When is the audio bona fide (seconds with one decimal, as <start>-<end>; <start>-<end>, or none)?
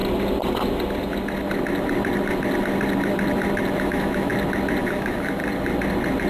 0.0-3.8; 4.3-4.8; 5.4-6.3